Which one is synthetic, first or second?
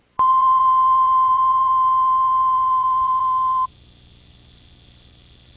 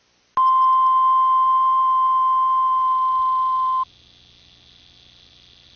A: first